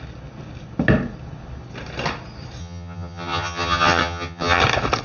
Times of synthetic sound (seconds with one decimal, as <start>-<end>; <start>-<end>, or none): 2.6-4.6